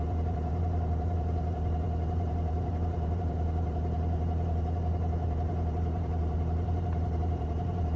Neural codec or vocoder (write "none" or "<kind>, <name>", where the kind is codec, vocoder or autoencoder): vocoder, BigVGAN v2